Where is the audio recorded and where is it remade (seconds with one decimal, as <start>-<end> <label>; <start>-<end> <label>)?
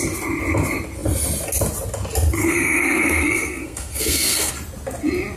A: 0.0-2.4 recorded; 2.4-4.5 remade; 4.5-5.4 recorded